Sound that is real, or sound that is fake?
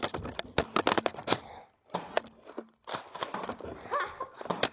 real